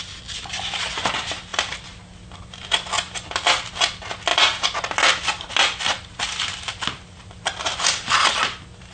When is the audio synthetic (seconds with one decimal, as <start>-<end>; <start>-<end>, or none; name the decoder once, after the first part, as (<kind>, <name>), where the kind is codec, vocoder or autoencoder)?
none